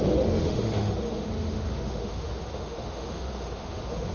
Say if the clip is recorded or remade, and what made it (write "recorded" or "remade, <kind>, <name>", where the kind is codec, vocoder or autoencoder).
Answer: remade, autoencoder, DAC-VAE